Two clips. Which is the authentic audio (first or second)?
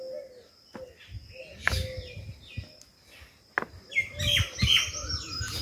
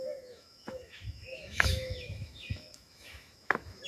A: first